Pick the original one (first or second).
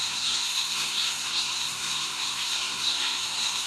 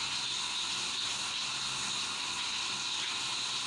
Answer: second